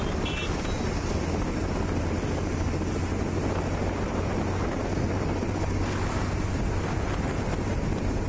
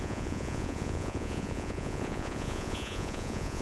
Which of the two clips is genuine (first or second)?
first